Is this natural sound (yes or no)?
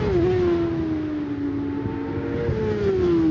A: yes